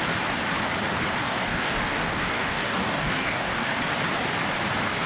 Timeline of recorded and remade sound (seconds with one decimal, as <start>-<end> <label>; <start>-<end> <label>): 0.0-1.2 recorded; 1.2-3.8 remade; 3.8-5.1 recorded